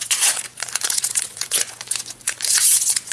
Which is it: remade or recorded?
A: remade